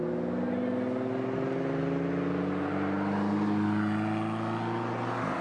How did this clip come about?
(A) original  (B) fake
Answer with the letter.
A